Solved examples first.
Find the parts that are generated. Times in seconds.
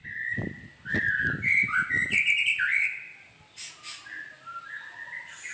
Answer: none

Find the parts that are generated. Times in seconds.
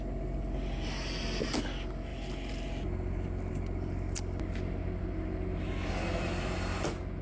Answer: none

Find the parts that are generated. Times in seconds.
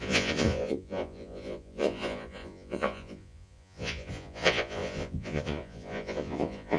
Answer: 0.0-6.8 (vocoder, Vocos)